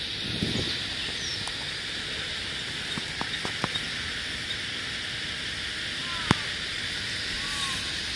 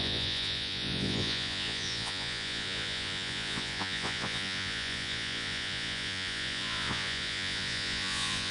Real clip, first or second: first